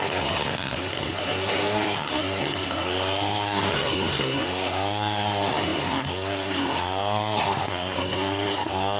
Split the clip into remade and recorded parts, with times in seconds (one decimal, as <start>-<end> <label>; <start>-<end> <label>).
0.0-9.0 remade

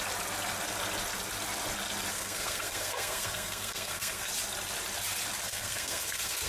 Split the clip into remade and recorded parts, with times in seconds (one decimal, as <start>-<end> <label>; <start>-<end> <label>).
0.0-2.1 recorded; 2.1-4.3 remade; 4.3-5.5 recorded; 5.5-6.5 remade

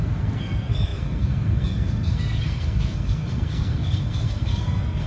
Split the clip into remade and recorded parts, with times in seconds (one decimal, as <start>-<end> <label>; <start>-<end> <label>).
0.0-5.1 remade

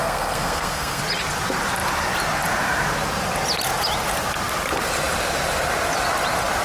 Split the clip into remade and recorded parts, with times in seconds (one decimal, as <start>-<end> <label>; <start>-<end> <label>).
0.0-1.0 remade; 1.0-6.6 recorded

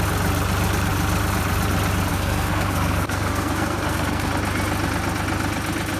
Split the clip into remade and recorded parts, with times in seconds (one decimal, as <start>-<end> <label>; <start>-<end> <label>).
0.0-2.1 recorded; 2.1-4.3 remade; 4.3-6.0 recorded